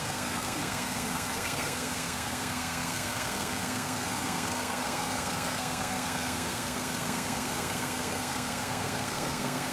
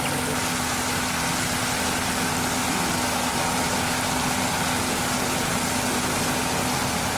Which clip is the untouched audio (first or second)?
second